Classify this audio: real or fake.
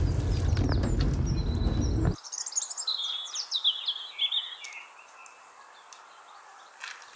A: real